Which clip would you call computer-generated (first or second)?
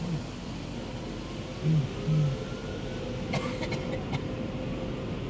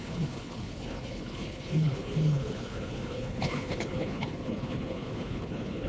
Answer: second